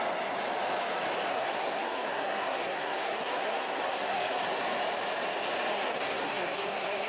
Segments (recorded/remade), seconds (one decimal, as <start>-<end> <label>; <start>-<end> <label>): 0.0-1.3 recorded; 1.3-4.4 remade; 4.4-5.7 recorded; 5.7-7.1 remade